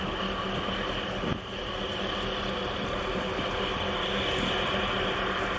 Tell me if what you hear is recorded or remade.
recorded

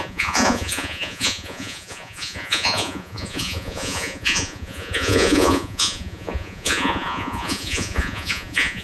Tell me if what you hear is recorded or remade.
remade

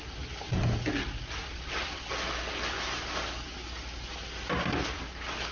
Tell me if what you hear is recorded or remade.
recorded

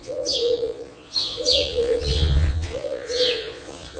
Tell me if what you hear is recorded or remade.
remade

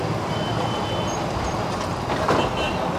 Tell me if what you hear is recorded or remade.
recorded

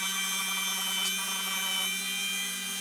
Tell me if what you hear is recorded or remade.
remade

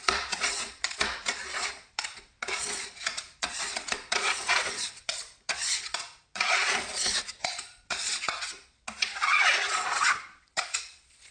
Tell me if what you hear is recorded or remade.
remade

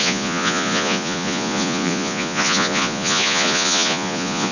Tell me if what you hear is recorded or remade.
remade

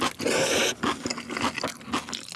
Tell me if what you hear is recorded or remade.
recorded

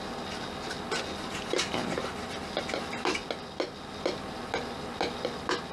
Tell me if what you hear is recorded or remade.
recorded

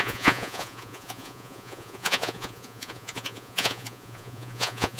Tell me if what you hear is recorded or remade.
remade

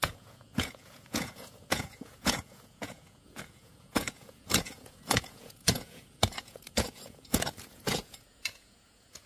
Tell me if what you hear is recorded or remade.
remade